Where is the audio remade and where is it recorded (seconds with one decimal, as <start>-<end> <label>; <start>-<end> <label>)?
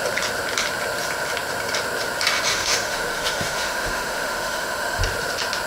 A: 0.0-2.5 recorded; 2.5-5.0 remade; 5.0-5.7 recorded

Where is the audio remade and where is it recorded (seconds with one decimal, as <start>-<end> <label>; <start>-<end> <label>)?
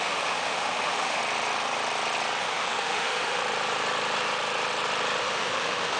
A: 0.0-1.2 remade; 1.2-2.4 recorded; 2.4-3.4 remade; 3.4-5.2 recorded; 5.2-6.0 remade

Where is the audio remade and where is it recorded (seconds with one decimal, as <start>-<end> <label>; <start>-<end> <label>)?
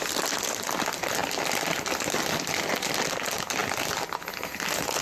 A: 0.0-5.0 recorded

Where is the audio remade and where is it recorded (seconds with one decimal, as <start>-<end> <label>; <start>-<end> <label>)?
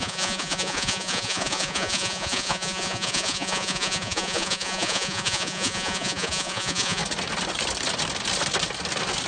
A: 0.0-7.0 remade; 7.0-9.3 recorded